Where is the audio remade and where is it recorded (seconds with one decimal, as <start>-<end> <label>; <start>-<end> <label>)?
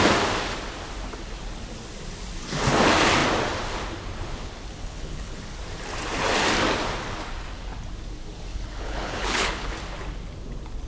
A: 0.0-4.8 recorded; 4.8-5.4 remade; 5.4-8.5 recorded; 8.5-9.7 remade; 9.7-10.9 recorded